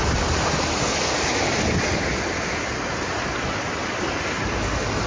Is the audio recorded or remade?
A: recorded